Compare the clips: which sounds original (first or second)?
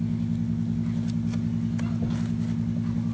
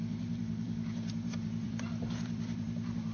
first